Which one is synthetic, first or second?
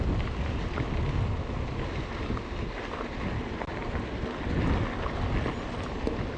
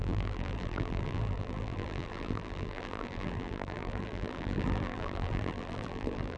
second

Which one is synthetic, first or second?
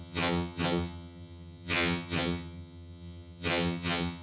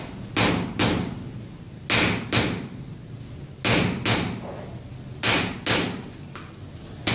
first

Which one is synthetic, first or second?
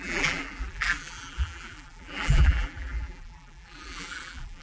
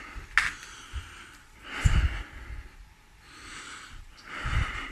first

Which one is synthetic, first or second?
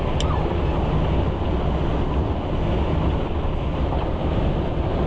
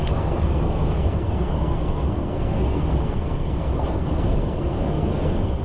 second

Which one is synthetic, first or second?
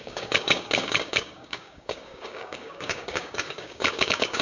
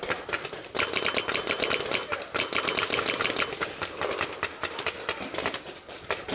first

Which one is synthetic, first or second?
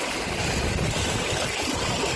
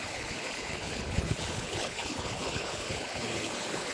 second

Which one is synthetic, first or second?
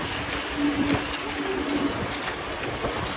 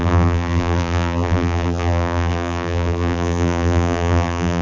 second